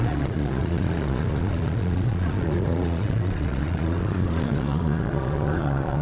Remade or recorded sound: remade